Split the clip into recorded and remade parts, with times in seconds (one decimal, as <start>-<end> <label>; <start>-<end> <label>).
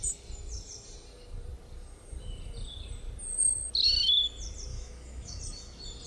0.0-4.7 recorded; 4.7-5.4 remade; 5.4-6.1 recorded